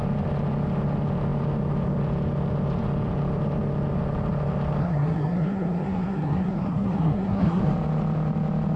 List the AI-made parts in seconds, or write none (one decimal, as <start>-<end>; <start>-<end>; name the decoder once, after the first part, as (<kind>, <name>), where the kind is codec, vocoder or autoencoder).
4.8-7.6 (codec, SNAC)